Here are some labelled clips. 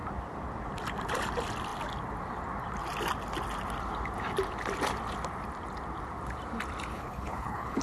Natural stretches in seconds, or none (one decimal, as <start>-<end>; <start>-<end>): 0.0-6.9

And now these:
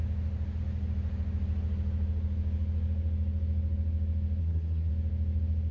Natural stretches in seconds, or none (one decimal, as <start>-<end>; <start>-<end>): 0.0-4.4; 4.9-5.7

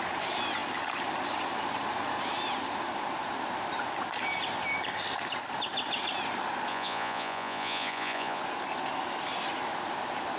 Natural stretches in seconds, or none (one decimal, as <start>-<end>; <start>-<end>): 0.0-6.7; 8.4-10.4

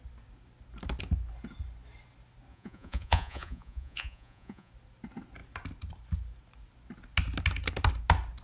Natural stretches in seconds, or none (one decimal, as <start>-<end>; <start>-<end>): 0.0-2.5; 4.7-8.4

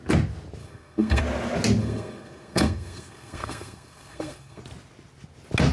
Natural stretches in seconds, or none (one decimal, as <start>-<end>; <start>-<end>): 0.0-0.6; 1.2-1.8; 4.6-5.7